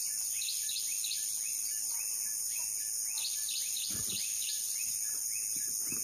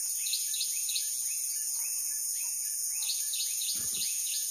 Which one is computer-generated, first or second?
second